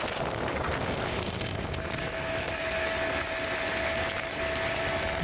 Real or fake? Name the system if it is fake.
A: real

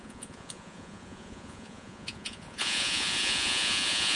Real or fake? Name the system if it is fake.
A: fake, vocoder, Vocos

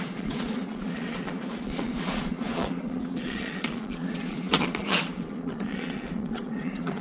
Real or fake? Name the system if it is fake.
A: fake, vocoder, Vocos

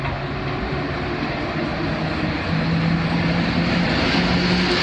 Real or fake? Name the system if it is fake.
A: real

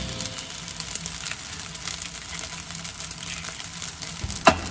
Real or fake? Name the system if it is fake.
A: real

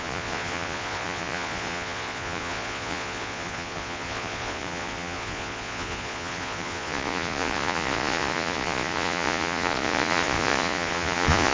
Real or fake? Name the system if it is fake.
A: fake, vocoder, Vocos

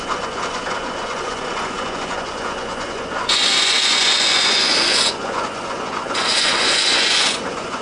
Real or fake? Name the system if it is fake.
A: fake, vocoder, Vocos